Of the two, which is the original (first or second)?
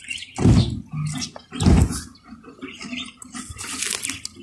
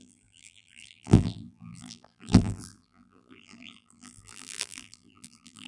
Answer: first